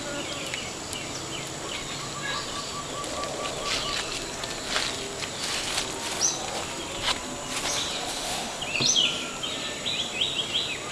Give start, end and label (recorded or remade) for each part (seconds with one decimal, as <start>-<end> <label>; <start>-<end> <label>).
0.0-8.1 recorded; 8.1-8.6 remade; 8.6-10.9 recorded